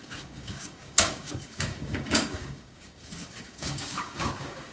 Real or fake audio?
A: fake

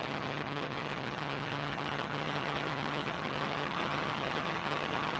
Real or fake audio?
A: fake